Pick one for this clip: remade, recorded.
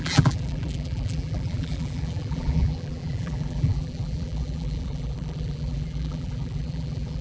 remade